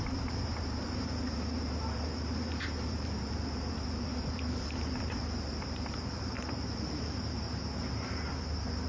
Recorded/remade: remade